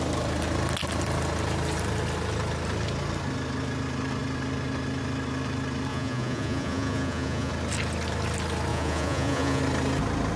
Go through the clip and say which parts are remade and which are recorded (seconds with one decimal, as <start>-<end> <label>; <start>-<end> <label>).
0.0-5.9 recorded; 5.9-7.5 remade; 7.5-8.7 recorded; 8.7-9.6 remade; 9.6-10.4 recorded